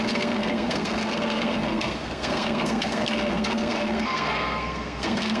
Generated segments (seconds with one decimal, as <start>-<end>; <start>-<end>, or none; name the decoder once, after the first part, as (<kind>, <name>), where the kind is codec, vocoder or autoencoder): 0.0-5.4 (codec, SNAC)